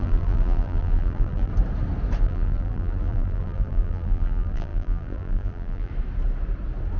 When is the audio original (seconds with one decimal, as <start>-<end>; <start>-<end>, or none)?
1.5-2.2; 5.9-7.0